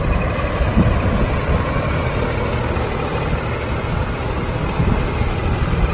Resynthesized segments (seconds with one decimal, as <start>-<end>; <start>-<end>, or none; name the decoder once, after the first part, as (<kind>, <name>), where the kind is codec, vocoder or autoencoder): none